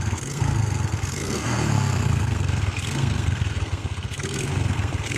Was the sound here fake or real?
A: fake